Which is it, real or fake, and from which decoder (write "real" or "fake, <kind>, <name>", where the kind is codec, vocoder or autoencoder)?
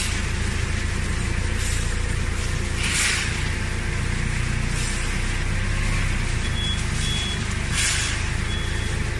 real